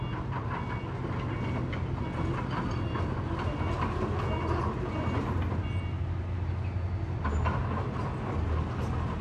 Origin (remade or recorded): recorded